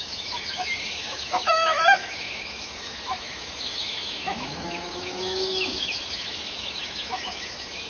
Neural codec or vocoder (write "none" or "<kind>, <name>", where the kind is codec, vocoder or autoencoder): autoencoder, DAC-VAE